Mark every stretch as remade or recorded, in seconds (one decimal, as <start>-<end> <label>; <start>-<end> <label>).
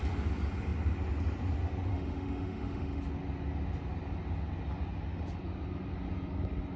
0.0-1.9 recorded; 1.9-3.0 remade; 3.0-6.8 recorded